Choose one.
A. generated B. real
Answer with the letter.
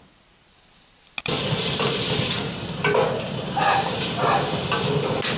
B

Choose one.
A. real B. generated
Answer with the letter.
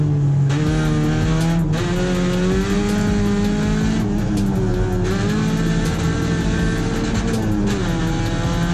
A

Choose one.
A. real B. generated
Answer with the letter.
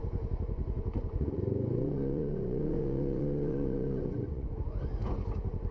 B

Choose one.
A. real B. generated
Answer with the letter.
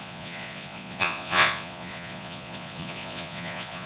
B